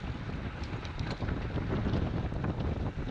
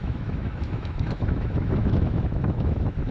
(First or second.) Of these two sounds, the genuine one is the first